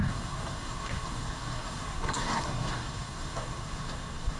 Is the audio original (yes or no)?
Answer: no